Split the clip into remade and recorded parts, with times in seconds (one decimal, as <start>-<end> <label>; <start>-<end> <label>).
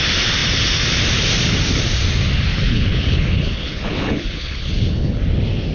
0.0-2.5 recorded; 2.5-5.2 remade; 5.2-5.7 recorded